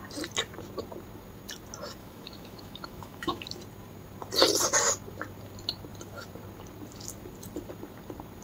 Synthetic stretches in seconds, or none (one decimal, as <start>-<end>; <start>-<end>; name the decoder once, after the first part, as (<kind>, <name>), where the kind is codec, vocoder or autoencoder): 2.0-3.6 (autoencoder, DAC-VAE)